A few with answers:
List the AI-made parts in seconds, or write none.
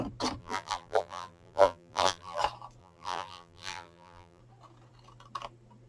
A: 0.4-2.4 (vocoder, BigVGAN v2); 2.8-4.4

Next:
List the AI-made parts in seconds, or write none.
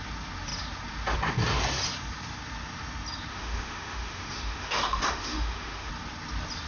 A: 3.3-5.9 (autoencoder, DAC-VAE)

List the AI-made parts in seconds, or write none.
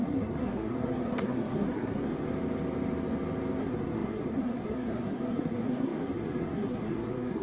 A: 0.0-2.3 (codec, SNAC); 3.6-7.4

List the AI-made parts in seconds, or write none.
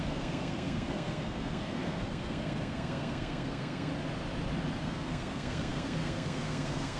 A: 0.0-3.9 (codec, SNAC); 4.8-7.0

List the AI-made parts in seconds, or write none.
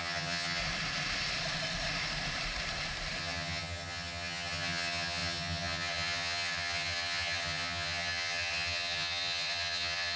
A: 0.0-0.6 (vocoder, HiFi-GAN); 3.2-10.2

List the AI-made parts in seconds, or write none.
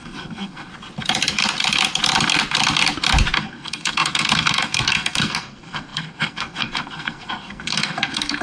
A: 0.0-0.7 (codec, SNAC); 3.4-8.4